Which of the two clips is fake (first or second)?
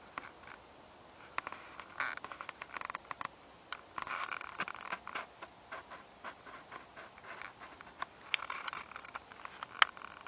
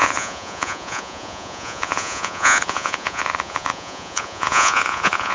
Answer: second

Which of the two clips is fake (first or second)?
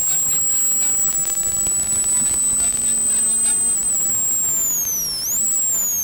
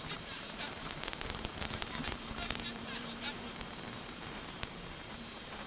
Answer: second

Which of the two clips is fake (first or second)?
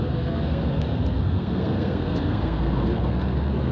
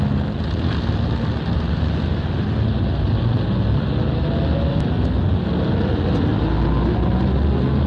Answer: first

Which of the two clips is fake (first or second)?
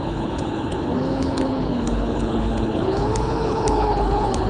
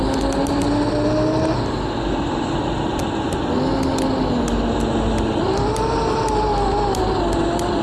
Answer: first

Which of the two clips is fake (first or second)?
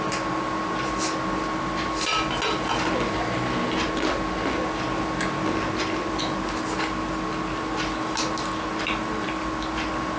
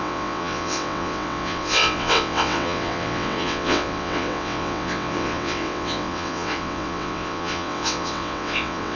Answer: second